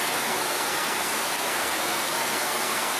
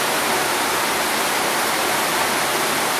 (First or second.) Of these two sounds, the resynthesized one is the first